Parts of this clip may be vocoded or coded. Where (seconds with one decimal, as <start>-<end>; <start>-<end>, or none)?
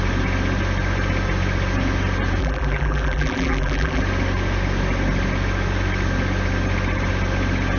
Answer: 2.4-4.0